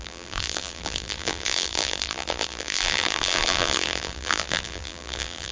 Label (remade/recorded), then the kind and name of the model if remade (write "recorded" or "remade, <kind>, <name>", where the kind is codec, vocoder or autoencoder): remade, vocoder, BigVGAN v2